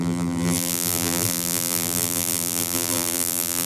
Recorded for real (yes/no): no